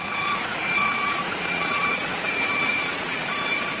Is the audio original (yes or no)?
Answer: no